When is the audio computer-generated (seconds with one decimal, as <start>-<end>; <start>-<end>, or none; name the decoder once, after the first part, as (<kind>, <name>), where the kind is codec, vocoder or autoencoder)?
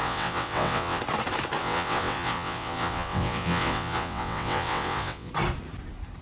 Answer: 0.0-1.0 (vocoder, WaveNeXt); 1.6-5.3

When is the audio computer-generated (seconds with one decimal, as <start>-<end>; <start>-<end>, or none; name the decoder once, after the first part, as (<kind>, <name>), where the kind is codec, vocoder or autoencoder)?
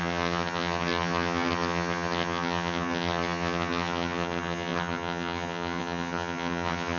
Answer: 0.0-7.0 (vocoder, HiFi-GAN)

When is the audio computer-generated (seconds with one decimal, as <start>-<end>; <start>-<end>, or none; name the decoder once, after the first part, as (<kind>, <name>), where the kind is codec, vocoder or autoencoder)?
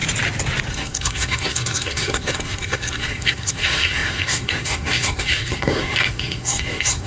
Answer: 0.7-7.1 (codec, SNAC)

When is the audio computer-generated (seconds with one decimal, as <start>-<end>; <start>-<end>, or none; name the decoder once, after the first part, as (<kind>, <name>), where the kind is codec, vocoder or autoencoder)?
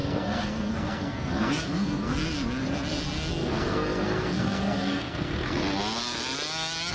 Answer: 0.0-2.2 (codec, SNAC); 3.3-5.6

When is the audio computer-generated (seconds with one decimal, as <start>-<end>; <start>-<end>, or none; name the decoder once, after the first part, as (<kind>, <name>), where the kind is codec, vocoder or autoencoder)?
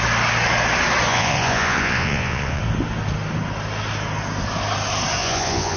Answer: 1.1-2.6 (vocoder, Vocos); 5.2-5.8